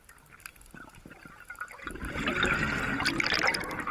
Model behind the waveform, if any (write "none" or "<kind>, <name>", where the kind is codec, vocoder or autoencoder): none